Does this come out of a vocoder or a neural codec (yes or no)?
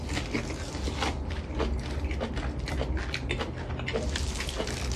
no